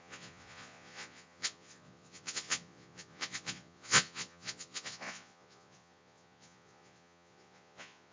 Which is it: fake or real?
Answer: fake